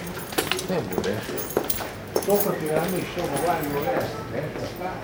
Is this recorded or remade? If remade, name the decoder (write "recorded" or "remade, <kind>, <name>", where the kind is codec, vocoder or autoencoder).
recorded